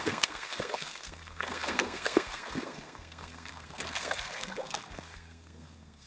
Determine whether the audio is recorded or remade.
remade